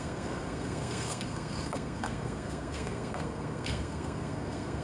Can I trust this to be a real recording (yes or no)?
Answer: no